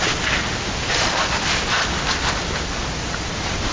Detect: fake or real real